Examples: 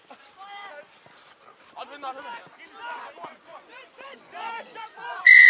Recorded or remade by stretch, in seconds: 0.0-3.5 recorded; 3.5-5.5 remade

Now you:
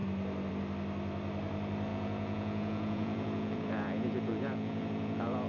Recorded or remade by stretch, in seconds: 0.0-1.9 recorded; 1.9-5.5 remade

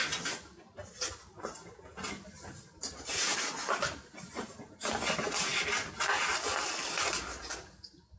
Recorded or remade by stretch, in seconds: 0.0-8.2 recorded

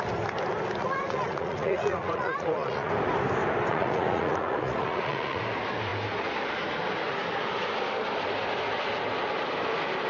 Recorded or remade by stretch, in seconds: 0.0-0.8 recorded; 0.8-2.9 remade; 2.9-3.7 recorded; 3.7-5.4 remade; 5.4-10.1 recorded